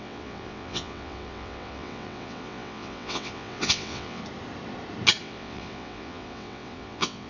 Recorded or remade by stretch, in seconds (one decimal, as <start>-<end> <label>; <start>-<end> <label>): 0.0-4.2 remade; 4.2-5.2 recorded; 5.2-7.3 remade